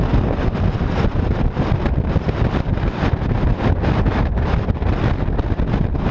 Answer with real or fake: real